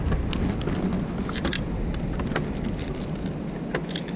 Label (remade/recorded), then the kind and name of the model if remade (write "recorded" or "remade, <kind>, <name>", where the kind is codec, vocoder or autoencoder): recorded